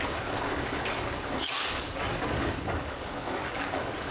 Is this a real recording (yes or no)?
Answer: no